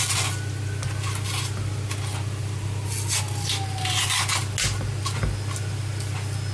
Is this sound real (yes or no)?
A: yes